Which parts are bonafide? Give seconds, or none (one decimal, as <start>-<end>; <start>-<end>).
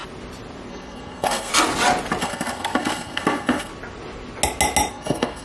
0.0-0.7; 1.5-2.2; 3.7-4.9